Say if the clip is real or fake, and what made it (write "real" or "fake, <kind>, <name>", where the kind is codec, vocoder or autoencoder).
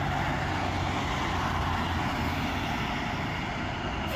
real